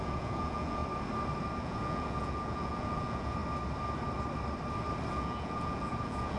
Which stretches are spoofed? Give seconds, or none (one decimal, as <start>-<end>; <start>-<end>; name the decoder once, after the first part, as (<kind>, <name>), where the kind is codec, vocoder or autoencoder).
0.0-0.8 (vocoder, Vocos); 1.6-3.4; 5.1-6.4